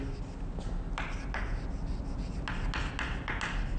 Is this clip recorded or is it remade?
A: recorded